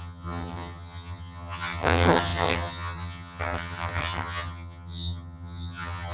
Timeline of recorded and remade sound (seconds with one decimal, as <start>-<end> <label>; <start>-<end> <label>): 0.0-6.1 remade